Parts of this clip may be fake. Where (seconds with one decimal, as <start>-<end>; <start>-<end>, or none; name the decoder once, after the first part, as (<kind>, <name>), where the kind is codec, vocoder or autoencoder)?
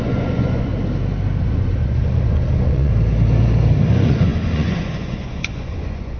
0.0-0.7 (vocoder, Vocos); 1.4-2.9; 3.9-6.2